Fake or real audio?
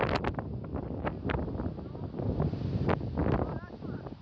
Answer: real